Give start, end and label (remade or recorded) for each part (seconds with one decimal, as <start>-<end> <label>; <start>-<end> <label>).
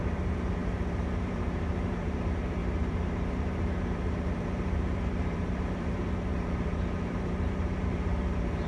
0.0-8.7 remade